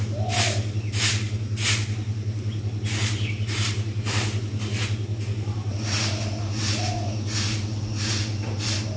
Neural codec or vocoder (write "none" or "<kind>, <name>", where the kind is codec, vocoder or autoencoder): none